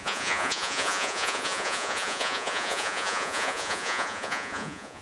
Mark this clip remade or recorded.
remade